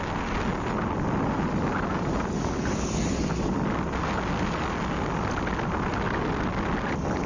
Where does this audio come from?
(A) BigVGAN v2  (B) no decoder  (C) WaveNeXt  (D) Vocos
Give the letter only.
B